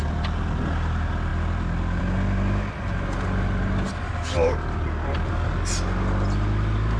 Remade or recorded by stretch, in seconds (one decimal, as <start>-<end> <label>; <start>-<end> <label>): 0.0-7.0 recorded